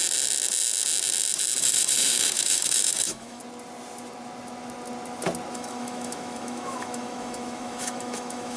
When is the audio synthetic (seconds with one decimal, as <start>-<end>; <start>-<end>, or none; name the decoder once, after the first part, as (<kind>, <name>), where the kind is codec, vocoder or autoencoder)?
1.6-3.4 (autoencoder, DAC-VAE); 5.5-8.6